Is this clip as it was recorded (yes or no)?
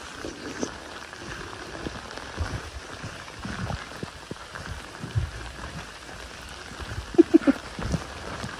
no